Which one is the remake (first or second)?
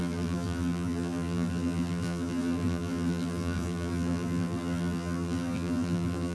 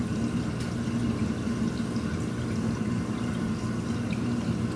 first